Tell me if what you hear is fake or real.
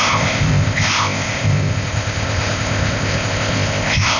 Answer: fake